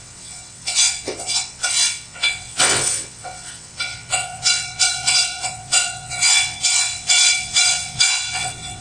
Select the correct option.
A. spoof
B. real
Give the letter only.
A